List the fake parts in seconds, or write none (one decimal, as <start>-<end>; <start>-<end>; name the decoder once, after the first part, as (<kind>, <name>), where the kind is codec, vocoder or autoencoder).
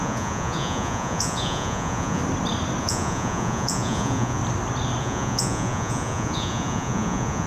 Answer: 0.0-2.2 (vocoder, Vocos); 2.8-4.4; 5.0-7.5